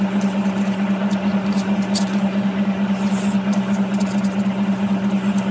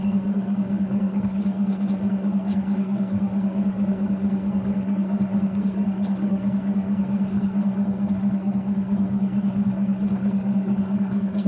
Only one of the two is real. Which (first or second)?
first